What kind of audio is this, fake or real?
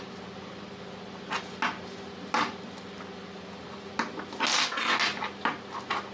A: real